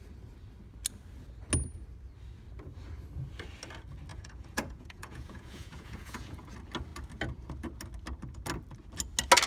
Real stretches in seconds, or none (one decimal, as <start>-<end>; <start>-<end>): 0.0-4.1; 6.5-9.5